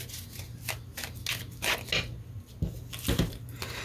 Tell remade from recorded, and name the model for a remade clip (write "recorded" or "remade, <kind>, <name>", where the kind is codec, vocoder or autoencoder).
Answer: recorded